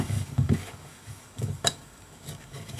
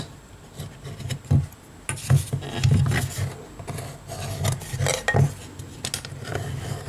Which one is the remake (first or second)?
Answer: first